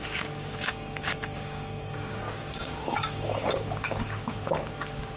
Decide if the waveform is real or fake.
fake